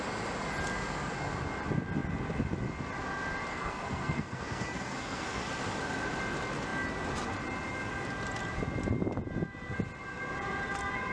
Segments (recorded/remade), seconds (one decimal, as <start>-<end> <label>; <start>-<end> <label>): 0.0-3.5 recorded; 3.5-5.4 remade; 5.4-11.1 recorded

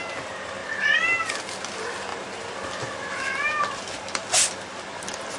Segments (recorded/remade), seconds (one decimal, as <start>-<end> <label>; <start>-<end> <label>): 0.0-5.4 recorded

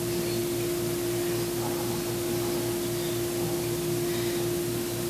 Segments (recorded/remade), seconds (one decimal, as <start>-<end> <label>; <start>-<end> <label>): 0.0-5.1 recorded

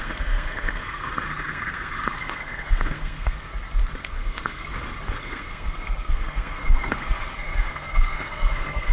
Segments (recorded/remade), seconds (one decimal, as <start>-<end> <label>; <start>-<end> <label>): 0.0-3.5 remade; 3.5-4.0 recorded; 4.0-4.6 remade; 4.6-5.2 recorded; 5.2-8.9 remade